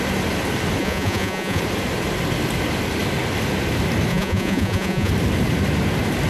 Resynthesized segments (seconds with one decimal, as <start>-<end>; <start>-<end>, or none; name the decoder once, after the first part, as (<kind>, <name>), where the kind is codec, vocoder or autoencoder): 0.8-1.6 (vocoder, Vocos); 4.1-5.1